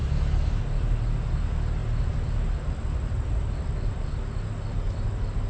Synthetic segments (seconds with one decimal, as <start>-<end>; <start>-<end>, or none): none